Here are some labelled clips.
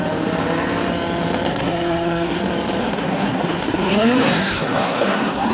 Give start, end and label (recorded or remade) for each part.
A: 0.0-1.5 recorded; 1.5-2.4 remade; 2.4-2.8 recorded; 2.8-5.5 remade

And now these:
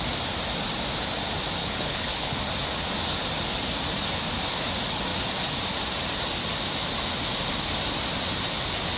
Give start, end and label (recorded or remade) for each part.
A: 0.0-1.6 recorded; 1.6-2.4 remade; 2.4-9.0 recorded

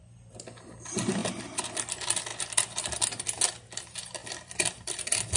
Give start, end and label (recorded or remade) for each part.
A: 0.0-1.2 recorded; 1.2-1.7 remade; 1.7-2.3 recorded; 2.3-2.8 remade; 2.8-4.2 recorded; 4.2-5.0 remade; 5.0-5.4 recorded